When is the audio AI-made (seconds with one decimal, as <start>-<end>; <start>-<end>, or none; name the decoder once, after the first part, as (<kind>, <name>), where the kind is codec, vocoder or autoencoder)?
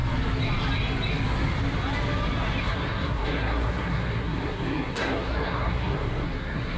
2.6-6.8 (codec, SNAC)